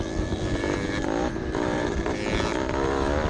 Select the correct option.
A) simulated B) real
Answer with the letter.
B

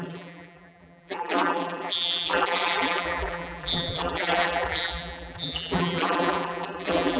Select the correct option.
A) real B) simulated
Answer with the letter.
B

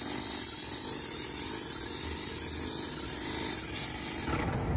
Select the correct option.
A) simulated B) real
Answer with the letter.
B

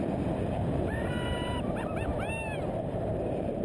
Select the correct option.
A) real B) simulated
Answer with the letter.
B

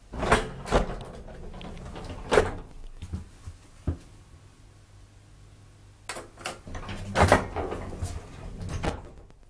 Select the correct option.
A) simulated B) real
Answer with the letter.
B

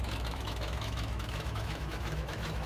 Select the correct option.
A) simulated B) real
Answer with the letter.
A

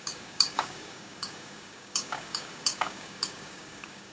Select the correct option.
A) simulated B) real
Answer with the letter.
A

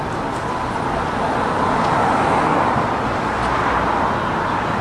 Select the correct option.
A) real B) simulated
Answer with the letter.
A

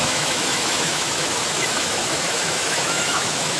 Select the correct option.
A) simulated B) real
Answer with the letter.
A